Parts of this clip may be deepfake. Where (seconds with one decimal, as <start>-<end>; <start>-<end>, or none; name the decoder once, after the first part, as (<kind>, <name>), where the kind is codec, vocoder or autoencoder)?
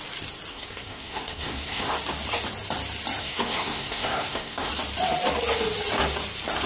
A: 0.5-1.9 (codec, SNAC); 3.2-4.7